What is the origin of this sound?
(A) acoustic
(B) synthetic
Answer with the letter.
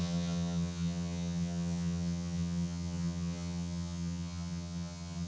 B